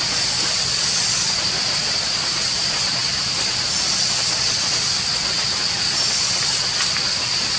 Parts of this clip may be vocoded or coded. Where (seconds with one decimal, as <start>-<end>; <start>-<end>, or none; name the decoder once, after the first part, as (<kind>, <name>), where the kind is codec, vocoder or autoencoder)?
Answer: none